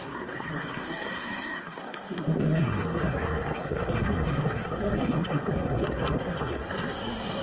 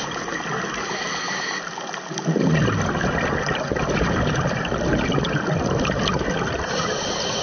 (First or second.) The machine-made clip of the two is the first